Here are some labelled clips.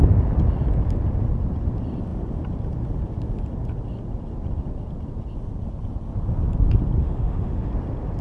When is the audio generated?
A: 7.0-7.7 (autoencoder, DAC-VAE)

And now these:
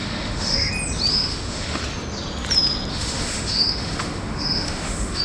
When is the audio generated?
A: 0.0-0.7 (autoencoder, DAC-VAE); 1.1-1.8; 2.9-5.2